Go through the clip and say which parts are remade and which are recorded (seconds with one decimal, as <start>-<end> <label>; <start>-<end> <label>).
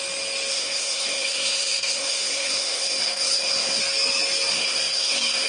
0.0-0.5 recorded; 0.5-3.8 remade; 3.8-4.5 recorded; 4.5-5.5 remade